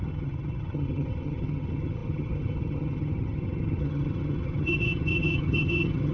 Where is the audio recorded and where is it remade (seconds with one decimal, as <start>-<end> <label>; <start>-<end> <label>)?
0.0-6.1 remade